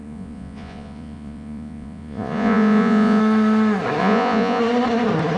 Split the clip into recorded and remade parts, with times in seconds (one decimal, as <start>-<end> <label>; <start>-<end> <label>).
0.0-3.2 remade; 3.2-4.0 recorded; 4.0-4.6 remade; 4.6-5.4 recorded